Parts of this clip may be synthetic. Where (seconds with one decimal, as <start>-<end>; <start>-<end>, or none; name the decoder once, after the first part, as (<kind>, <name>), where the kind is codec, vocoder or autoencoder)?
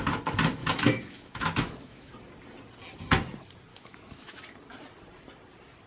0.6-2.1 (autoencoder, DAC-VAE); 3.7-4.4